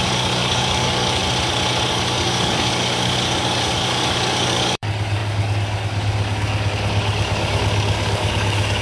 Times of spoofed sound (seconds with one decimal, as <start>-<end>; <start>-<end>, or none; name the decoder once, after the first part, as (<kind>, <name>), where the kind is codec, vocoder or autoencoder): 0.0-1.2 (codec, DAC); 1.9-8.8